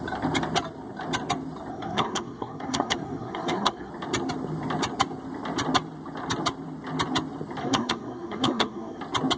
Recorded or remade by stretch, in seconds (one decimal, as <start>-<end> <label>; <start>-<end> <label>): 0.0-1.7 recorded; 1.7-3.9 remade; 3.9-7.6 recorded; 7.6-9.0 remade; 9.0-9.4 recorded